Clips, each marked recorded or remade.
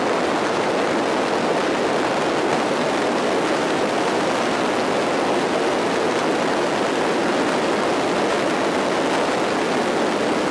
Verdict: recorded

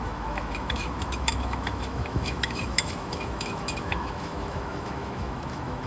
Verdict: remade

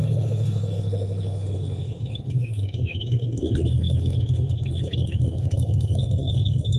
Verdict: remade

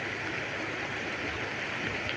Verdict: recorded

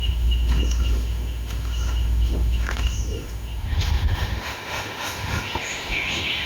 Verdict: remade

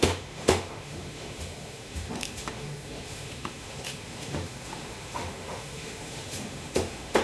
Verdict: remade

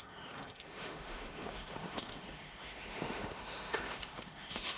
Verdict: remade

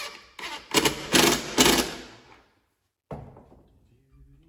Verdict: recorded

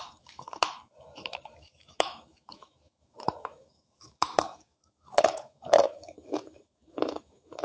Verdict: remade